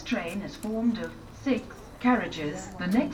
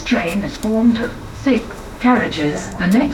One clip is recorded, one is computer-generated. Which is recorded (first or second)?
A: first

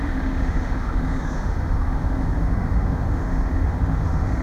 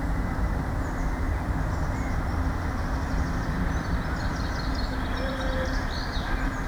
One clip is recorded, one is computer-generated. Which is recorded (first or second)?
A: second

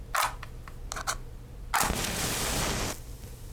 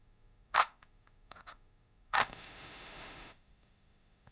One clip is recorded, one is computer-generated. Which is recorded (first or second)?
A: first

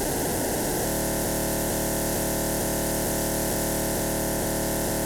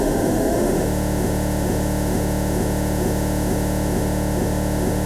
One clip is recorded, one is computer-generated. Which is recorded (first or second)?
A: first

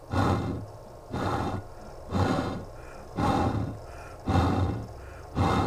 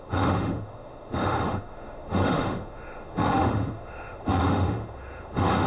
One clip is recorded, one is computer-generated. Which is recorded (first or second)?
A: first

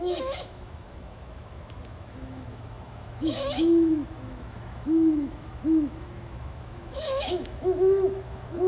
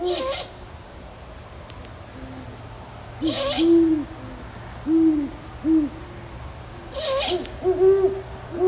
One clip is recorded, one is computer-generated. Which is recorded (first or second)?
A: second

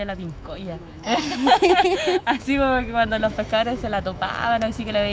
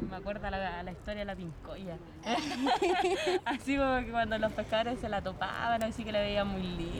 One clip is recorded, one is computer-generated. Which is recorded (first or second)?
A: second